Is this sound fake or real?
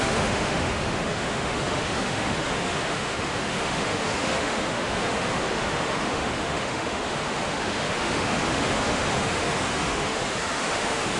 fake